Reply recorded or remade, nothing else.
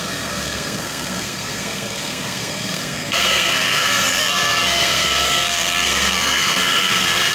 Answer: remade